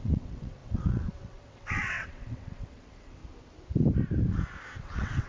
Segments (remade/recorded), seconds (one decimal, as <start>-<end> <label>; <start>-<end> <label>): 0.0-3.2 remade; 3.2-4.8 recorded; 4.8-5.3 remade